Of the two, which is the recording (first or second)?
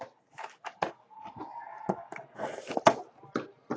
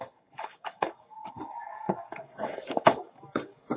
first